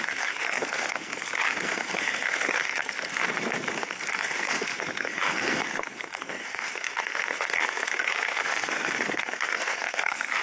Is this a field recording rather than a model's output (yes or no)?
no